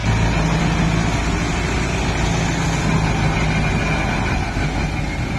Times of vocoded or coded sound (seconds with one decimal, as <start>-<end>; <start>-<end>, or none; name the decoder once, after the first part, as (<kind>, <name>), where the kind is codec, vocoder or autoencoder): 0.0-0.6 (vocoder, BigVGAN v2)